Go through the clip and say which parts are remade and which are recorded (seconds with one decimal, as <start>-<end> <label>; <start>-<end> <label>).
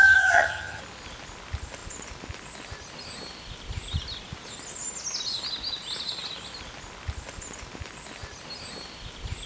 0.0-0.8 remade; 0.8-9.5 recorded